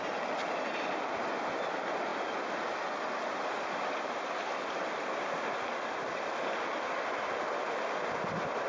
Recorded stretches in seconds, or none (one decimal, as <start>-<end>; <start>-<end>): 0.0-8.7